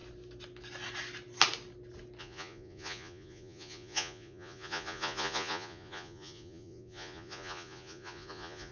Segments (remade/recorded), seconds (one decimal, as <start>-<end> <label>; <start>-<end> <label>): 0.0-2.2 recorded; 2.2-8.7 remade